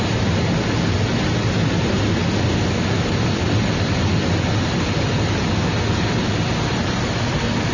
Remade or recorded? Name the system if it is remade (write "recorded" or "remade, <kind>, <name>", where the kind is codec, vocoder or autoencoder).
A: recorded